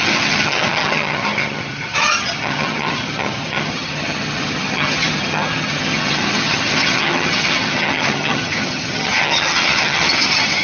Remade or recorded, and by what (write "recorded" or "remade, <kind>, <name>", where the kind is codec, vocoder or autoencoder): remade, vocoder, HiFi-GAN